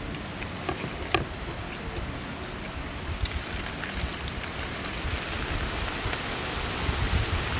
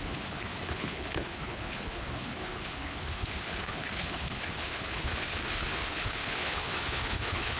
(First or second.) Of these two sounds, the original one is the first